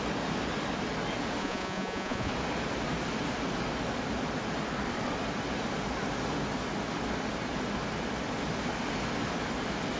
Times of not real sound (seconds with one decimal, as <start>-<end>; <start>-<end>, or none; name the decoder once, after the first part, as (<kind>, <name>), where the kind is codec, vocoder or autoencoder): 1.4-2.3 (vocoder, Vocos)